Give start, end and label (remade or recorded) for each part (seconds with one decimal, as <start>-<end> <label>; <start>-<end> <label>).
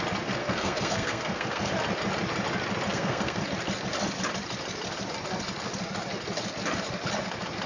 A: 0.0-0.4 recorded; 0.4-1.7 remade; 1.7-2.9 recorded; 2.9-3.4 remade; 3.4-7.7 recorded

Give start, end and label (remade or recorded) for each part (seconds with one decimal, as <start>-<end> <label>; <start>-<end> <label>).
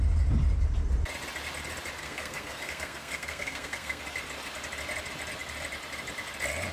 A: 0.0-2.0 recorded; 2.0-4.0 remade; 4.0-6.7 recorded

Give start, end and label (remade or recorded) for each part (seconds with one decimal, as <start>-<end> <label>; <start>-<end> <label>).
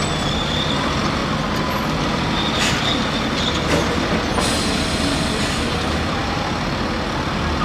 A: 0.0-6.2 recorded; 6.2-6.9 remade; 6.9-7.6 recorded